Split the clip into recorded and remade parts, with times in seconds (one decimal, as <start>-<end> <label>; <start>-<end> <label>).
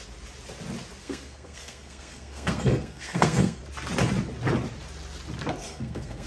0.0-1.0 recorded; 1.0-3.6 remade; 3.6-5.6 recorded; 5.6-6.3 remade